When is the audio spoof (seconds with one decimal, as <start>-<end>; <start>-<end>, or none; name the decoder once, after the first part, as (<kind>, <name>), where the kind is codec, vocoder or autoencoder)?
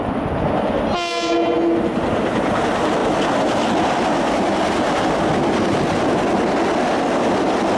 none